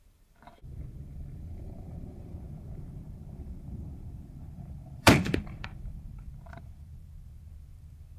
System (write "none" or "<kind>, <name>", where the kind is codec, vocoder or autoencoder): vocoder, BigVGAN v2